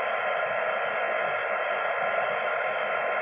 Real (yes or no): yes